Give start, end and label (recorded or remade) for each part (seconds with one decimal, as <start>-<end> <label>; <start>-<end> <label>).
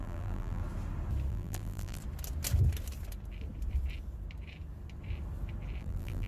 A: 0.0-0.6 remade; 0.6-1.3 recorded; 1.3-2.0 remade; 2.0-5.8 recorded; 5.8-6.3 remade